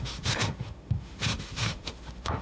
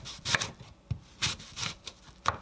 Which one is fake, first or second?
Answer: first